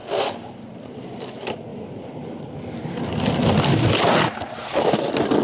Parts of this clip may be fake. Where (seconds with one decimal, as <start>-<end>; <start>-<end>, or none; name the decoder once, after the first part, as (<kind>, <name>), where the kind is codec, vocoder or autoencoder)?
none